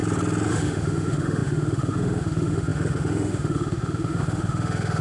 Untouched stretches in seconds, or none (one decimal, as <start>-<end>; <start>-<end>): 0.0-0.5